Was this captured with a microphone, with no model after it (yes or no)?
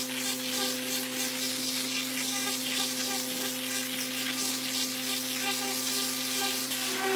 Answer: yes